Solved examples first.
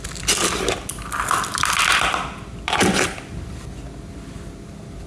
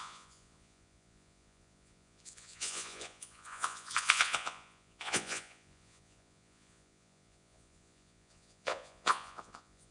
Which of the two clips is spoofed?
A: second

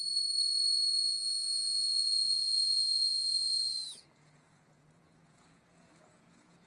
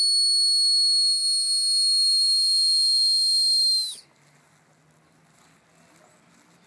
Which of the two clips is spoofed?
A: first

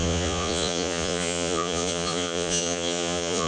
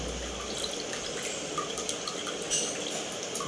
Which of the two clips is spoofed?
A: first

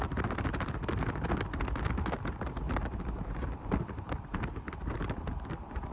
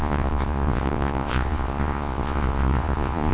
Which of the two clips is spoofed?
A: second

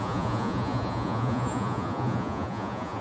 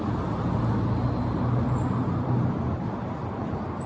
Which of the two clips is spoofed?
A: first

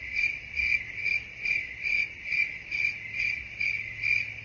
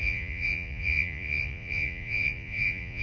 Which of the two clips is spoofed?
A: second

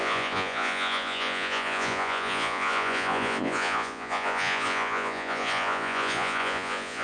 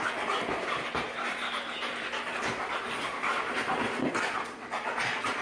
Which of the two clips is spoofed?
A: first